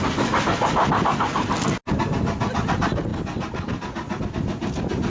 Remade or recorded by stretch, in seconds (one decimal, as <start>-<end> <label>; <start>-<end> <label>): 0.0-5.1 recorded